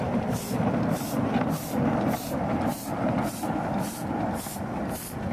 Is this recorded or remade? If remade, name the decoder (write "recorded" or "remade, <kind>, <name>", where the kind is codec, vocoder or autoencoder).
recorded